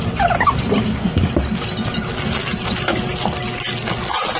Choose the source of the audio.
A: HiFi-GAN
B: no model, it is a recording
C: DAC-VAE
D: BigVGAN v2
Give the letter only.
B